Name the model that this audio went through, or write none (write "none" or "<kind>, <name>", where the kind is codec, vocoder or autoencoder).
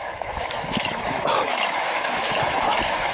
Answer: autoencoder, DAC-VAE